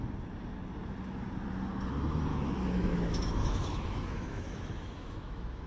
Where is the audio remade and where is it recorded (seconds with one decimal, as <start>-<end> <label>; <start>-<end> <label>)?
0.0-2.3 recorded; 2.3-5.7 remade